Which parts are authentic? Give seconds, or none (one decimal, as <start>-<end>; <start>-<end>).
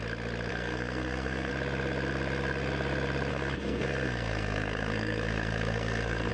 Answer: 0.0-0.5; 1.5-3.3